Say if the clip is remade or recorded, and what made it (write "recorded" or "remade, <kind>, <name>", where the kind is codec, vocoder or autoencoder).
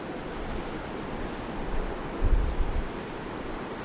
recorded